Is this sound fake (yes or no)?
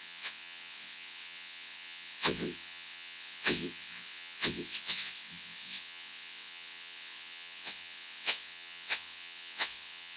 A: yes